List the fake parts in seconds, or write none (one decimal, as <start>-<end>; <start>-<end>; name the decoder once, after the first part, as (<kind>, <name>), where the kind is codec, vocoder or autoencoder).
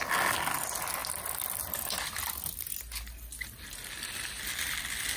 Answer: none